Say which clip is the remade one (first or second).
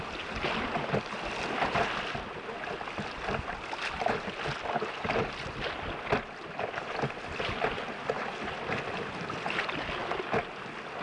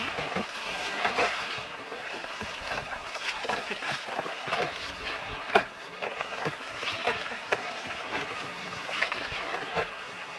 second